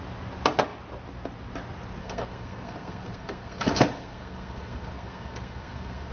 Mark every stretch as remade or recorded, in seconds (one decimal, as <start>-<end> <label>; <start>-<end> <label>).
0.0-2.0 recorded; 2.0-6.1 remade